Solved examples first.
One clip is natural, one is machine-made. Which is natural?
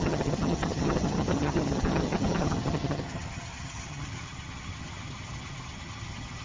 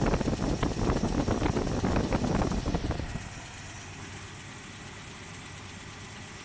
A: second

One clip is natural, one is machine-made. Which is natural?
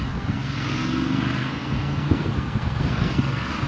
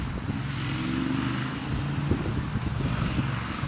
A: second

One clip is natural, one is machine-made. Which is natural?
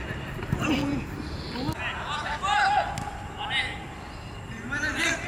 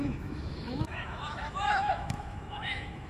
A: first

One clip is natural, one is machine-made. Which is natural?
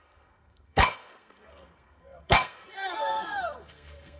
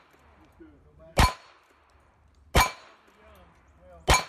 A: second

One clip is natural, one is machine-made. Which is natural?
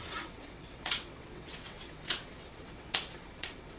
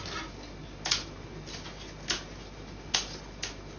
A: second